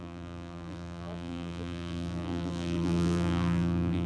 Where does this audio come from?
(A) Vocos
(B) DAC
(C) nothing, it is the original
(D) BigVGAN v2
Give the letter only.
D